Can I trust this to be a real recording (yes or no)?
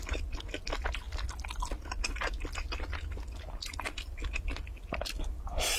yes